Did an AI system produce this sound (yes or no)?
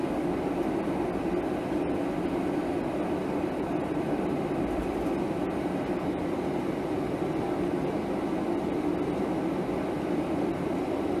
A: no